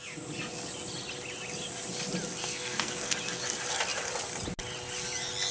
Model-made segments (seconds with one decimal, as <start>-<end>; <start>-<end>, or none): 2.4-3.1